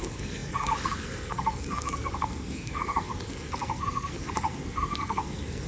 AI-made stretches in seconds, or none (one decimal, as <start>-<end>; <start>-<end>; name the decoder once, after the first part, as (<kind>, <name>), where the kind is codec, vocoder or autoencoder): 0.0-5.7 (codec, SNAC)